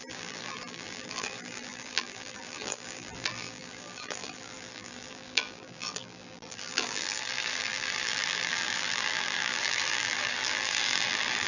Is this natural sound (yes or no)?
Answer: no